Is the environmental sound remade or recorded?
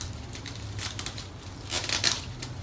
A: recorded